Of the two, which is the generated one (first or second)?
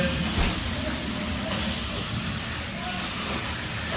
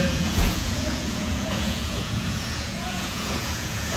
second